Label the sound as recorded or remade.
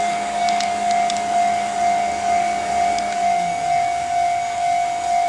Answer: remade